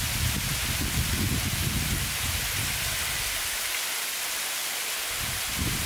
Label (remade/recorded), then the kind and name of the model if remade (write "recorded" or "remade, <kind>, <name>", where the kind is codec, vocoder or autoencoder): recorded